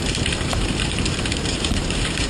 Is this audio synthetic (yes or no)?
yes